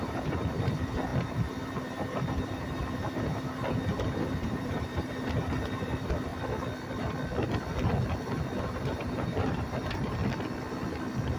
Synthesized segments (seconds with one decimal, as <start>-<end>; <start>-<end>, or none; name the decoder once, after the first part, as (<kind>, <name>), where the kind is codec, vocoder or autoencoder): 0.0-6.3 (vocoder, BigVGAN v2); 8.6-10.2